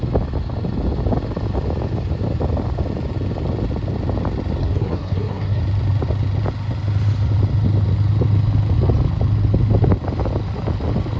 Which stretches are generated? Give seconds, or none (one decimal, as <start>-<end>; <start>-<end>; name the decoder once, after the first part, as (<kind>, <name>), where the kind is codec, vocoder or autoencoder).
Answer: 4.6-5.6 (codec, SNAC)